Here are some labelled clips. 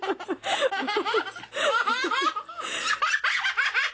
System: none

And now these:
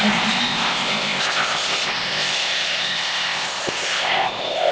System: codec, ZipCodec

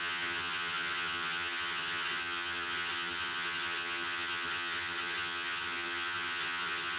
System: vocoder, HiFi-GAN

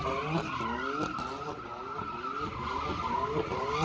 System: none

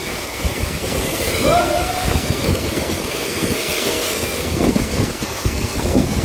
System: codec, SNAC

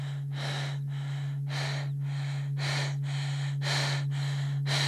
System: none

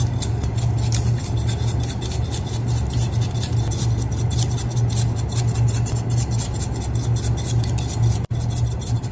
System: none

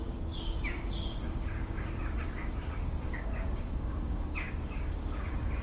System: codec, DAC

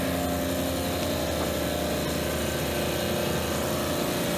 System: none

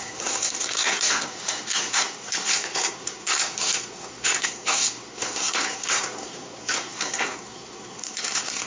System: codec, SNAC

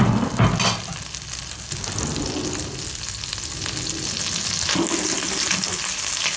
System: none